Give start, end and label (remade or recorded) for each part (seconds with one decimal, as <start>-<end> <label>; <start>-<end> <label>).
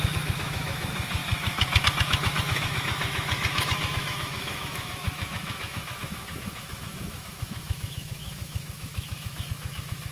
0.0-10.1 remade